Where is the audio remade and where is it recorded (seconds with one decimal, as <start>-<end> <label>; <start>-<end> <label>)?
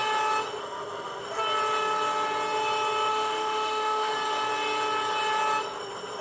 0.0-0.6 recorded; 0.6-1.2 remade; 1.2-3.1 recorded; 3.1-4.1 remade; 4.1-6.2 recorded